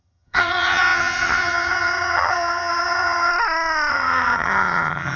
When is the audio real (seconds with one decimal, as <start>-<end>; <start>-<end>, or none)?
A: 3.3-3.9